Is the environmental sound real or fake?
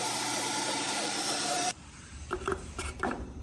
fake